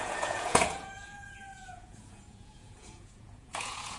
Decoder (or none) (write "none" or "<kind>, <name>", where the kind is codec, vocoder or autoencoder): vocoder, Vocos